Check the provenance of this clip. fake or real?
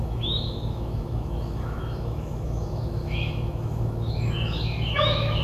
fake